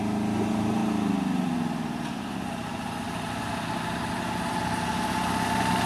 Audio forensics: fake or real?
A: real